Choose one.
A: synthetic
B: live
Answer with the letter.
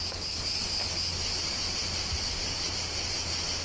B